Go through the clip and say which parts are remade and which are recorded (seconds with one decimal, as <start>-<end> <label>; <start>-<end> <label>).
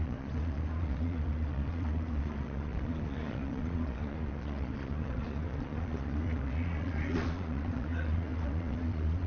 0.0-9.3 remade